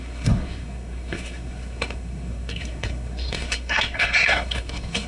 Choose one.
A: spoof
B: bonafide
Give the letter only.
A